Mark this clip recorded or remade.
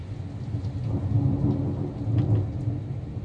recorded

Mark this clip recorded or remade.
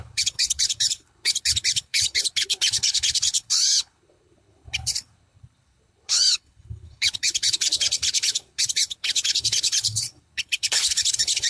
remade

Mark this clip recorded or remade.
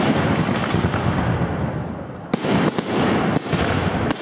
recorded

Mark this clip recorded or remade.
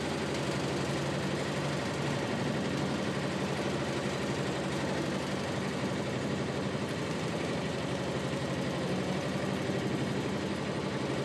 recorded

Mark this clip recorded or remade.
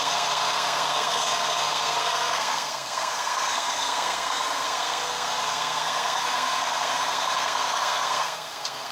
remade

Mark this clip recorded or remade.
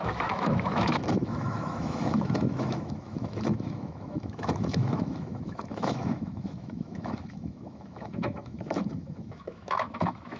remade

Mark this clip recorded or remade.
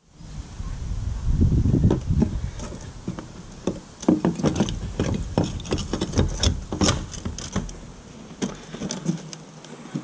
recorded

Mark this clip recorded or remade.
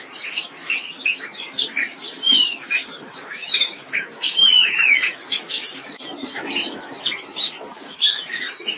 remade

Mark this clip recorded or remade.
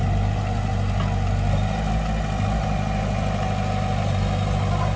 recorded